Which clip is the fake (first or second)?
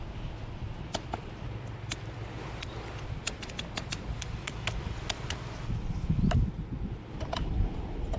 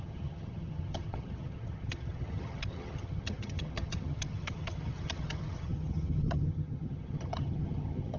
second